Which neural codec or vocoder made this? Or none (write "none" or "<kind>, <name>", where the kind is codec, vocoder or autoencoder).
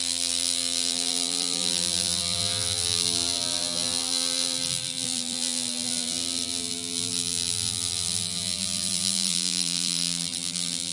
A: vocoder, BigVGAN v2